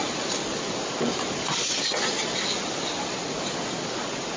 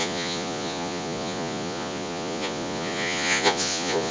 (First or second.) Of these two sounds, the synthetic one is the second